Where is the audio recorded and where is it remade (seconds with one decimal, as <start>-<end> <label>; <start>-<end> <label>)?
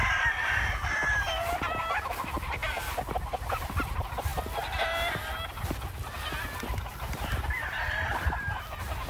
0.0-4.3 remade; 4.3-6.9 recorded; 6.9-9.1 remade